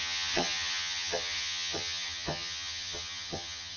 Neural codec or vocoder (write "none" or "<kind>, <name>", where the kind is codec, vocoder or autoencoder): vocoder, HiFi-GAN